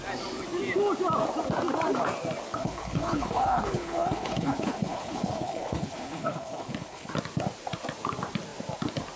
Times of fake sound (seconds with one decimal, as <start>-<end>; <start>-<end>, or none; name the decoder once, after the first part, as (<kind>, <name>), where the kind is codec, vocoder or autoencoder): 2.5-7.1 (codec, HILCodec)